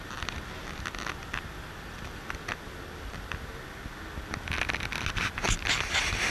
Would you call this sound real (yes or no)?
yes